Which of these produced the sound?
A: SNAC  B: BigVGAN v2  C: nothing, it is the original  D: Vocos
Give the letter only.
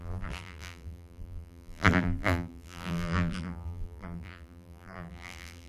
B